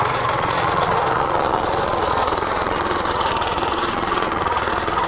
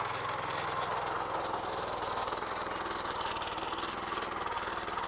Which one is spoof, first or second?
first